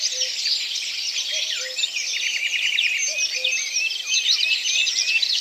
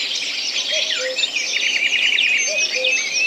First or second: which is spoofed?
first